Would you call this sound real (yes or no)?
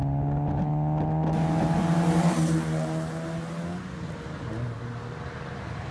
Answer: yes